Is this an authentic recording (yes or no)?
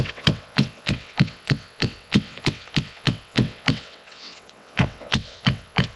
no